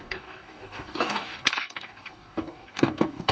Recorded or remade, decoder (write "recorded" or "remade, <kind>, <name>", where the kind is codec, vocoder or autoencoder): remade, codec, DAC